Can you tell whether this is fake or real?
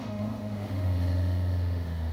fake